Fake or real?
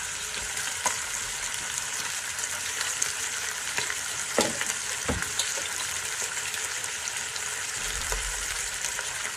fake